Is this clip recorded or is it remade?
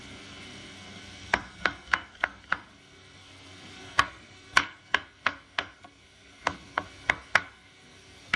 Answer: remade